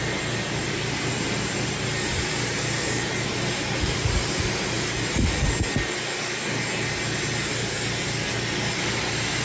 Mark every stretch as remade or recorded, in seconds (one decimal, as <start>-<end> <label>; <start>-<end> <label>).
0.0-0.6 recorded; 0.6-4.9 remade; 4.9-9.4 recorded